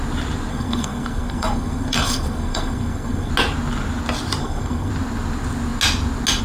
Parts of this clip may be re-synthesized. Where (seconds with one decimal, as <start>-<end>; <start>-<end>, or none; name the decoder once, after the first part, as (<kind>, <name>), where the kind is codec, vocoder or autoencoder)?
0.5-3.3 (codec, SNAC); 4.4-4.9

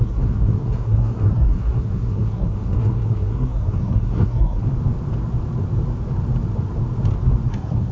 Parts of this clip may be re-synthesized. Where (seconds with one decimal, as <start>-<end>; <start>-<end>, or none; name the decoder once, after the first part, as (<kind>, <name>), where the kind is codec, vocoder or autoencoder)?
0.0-4.7 (codec, SNAC); 7.5-7.9

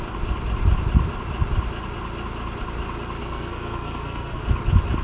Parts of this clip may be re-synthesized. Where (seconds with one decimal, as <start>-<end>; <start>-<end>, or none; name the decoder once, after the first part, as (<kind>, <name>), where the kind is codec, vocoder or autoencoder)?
3.2-4.4 (codec, SNAC)

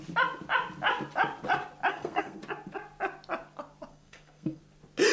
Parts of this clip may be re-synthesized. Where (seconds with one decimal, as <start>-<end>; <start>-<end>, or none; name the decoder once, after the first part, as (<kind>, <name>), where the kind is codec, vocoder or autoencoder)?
1.9-2.4 (codec, SNAC); 3.9-4.6